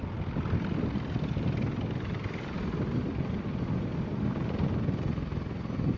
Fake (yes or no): no